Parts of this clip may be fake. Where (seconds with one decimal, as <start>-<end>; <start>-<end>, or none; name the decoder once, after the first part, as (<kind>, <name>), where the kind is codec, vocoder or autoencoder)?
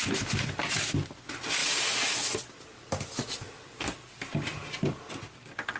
none